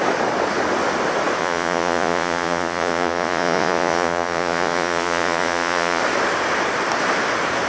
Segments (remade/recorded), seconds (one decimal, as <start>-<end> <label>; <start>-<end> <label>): 0.0-1.4 recorded; 1.4-6.0 remade; 6.0-7.7 recorded

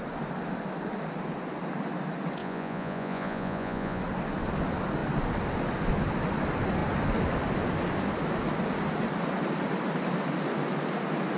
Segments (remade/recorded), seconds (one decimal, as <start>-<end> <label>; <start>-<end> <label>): 0.0-2.4 recorded; 2.4-4.0 remade; 4.0-11.4 recorded

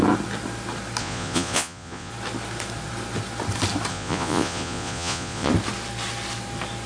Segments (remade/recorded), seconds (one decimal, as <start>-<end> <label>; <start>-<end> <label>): 0.0-1.0 recorded; 1.0-2.1 remade; 2.1-3.9 recorded; 3.9-5.5 remade; 5.5-6.9 recorded

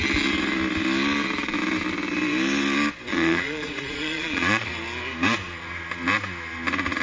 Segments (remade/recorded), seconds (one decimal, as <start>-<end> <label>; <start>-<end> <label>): 0.0-3.1 recorded; 3.1-4.7 remade; 4.7-7.0 recorded